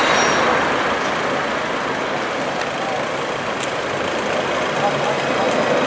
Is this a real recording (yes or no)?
yes